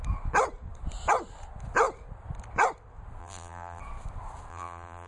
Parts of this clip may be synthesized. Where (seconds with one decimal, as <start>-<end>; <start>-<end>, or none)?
3.2-3.8; 4.5-5.1